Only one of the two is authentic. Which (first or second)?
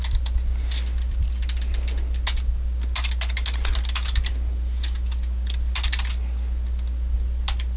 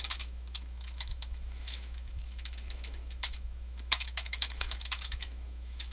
first